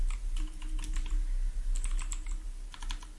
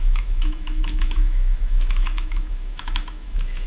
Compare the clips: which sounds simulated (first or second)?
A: second